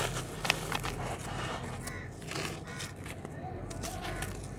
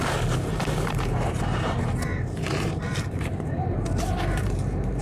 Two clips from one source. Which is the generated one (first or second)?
second